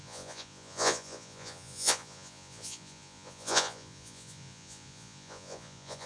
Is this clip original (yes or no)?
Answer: no